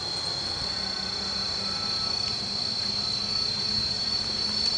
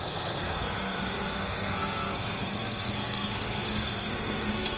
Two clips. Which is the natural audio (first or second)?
first